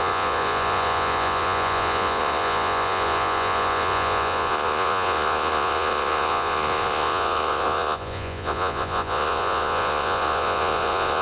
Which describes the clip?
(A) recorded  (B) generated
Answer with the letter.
B